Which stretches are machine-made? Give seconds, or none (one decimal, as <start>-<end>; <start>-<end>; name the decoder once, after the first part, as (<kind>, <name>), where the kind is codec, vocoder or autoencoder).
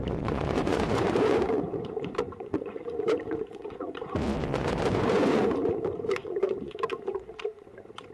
0.0-8.1 (vocoder, Vocos)